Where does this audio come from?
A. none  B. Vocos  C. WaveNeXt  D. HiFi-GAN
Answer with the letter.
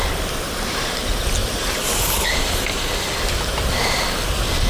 A